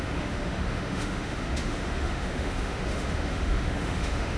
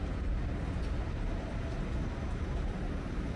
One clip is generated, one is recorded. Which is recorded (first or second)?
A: second